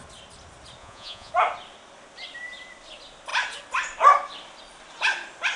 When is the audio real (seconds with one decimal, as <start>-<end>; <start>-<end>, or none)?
0.0-0.8; 1.3-5.6